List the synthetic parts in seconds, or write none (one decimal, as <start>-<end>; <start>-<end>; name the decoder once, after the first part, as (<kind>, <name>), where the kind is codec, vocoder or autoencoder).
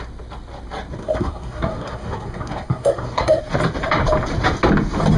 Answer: 1.0-3.4 (codec, SNAC)